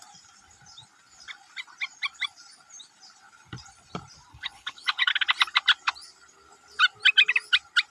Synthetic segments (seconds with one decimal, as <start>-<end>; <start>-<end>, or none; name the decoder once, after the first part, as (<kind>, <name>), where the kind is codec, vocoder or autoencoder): 4.3-5.1 (codec, HILCodec)